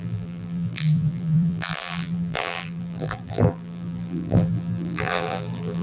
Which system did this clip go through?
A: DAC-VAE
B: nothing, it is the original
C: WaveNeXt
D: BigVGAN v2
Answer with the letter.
D